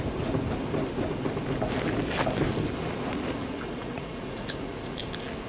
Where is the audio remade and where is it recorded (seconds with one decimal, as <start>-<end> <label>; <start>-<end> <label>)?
0.0-3.1 recorded; 3.1-5.0 remade; 5.0-5.5 recorded